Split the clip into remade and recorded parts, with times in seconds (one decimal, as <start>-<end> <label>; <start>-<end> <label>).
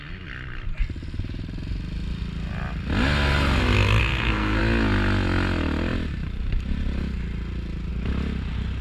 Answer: 0.0-4.0 recorded; 4.0-4.6 remade; 4.6-8.8 recorded